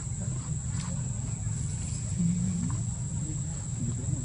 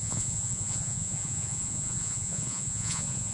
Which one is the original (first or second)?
first